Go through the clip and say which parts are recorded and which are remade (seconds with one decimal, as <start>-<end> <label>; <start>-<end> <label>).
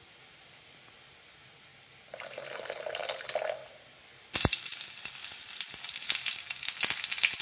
0.0-1.7 recorded; 1.7-2.6 remade; 2.6-7.4 recorded